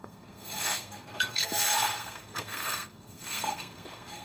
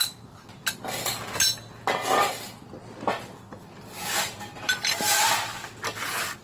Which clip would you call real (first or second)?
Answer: second